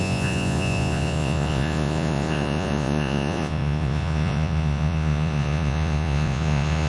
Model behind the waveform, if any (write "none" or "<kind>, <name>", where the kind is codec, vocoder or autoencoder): vocoder, Vocos